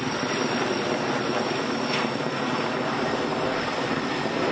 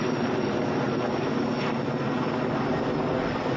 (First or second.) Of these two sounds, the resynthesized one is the first